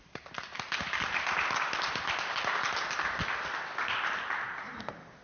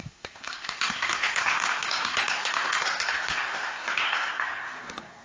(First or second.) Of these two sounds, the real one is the first